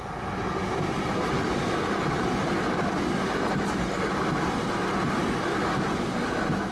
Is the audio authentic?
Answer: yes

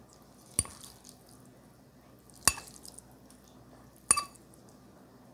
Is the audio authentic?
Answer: yes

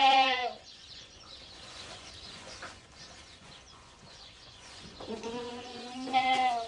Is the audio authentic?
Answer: no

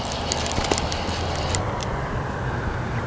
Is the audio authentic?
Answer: yes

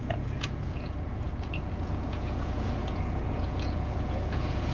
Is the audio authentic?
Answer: no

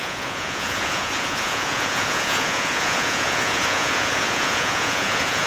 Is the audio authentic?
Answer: no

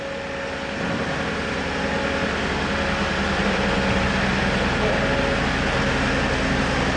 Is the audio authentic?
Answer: yes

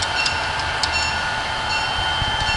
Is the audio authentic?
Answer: yes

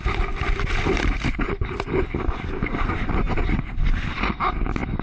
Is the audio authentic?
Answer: yes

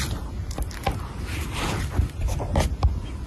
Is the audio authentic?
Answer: yes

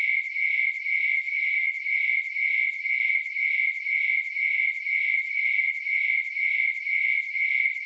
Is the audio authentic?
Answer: yes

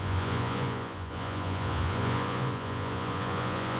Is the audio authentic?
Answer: no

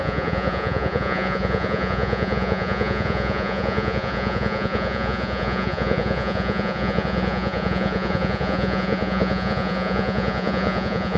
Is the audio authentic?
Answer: no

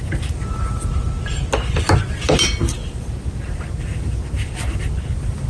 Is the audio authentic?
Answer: yes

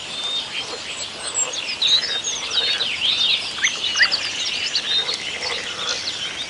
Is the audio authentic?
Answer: yes